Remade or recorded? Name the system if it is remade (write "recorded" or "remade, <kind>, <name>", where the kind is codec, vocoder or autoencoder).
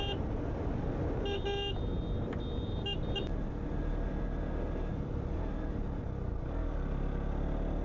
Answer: recorded